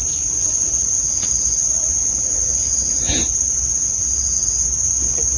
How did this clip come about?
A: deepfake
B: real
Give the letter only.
B